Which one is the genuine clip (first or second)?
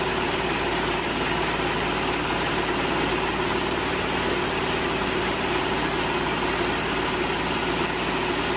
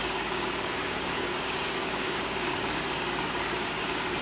first